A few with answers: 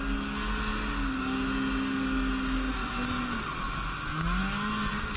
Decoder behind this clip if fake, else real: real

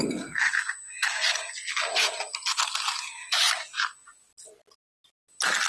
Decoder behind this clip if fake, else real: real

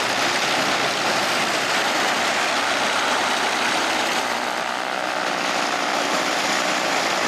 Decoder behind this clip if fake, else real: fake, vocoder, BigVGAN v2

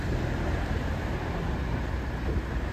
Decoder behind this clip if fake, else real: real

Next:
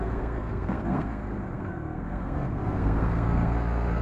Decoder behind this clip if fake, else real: fake, codec, SNAC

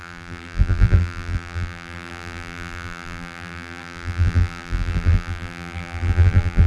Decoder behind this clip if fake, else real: fake, vocoder, BigVGAN v2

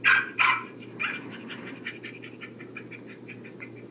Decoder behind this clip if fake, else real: real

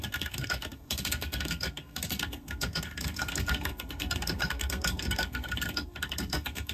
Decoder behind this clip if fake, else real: fake, codec, SNAC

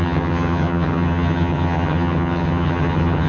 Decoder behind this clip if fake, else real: fake, vocoder, HiFi-GAN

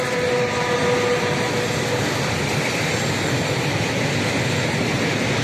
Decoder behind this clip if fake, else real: real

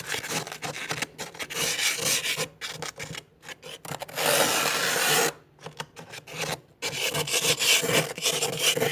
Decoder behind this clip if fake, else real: real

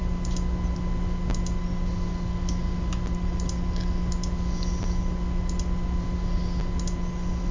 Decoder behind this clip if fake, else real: real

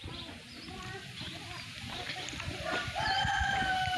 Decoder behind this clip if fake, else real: fake, vocoder, BigVGAN v2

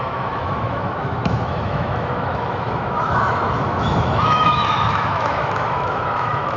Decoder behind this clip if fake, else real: fake, autoencoder, DAC-VAE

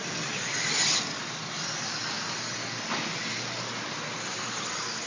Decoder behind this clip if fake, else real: real